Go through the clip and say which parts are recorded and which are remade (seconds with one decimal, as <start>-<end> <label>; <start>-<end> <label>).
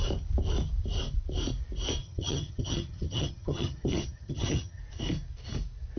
0.0-2.0 recorded; 2.0-4.8 remade; 4.8-6.0 recorded